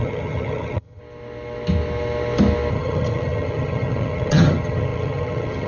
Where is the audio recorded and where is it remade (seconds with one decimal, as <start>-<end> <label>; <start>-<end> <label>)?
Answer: 0.0-1.0 remade; 1.0-2.7 recorded; 2.7-5.7 remade